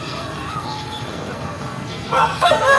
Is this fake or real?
fake